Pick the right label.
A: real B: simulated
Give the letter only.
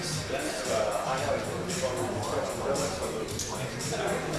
A